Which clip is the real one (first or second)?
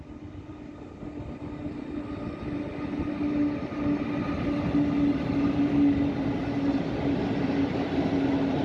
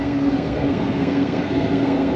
first